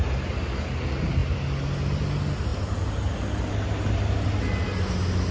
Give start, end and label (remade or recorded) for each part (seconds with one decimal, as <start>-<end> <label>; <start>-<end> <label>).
0.0-5.3 recorded